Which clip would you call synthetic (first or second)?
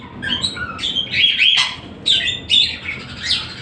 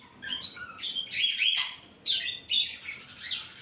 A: second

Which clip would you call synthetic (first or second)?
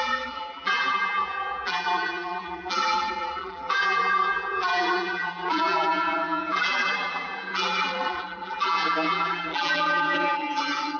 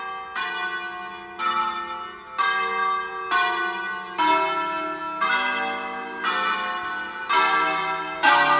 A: first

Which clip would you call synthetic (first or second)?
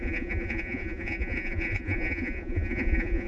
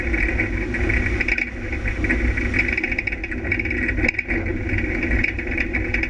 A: first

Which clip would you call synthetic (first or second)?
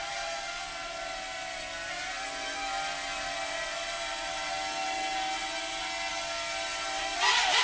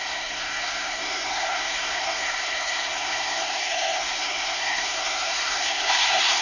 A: second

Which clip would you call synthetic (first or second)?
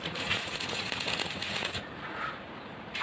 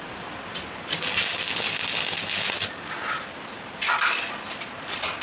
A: first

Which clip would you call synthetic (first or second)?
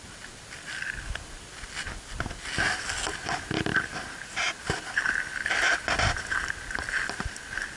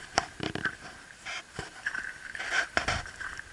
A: second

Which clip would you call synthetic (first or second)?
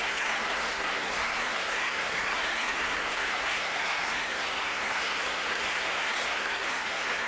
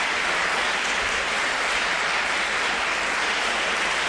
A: first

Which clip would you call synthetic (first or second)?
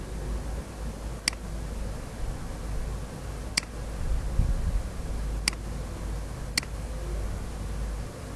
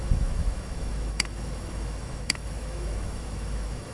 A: second